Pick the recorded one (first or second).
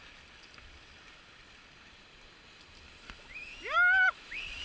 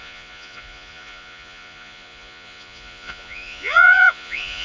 first